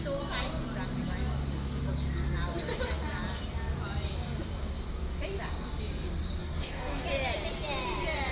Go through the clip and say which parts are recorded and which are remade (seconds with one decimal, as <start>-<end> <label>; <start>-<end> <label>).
0.0-6.4 recorded; 6.4-7.0 remade; 7.0-8.3 recorded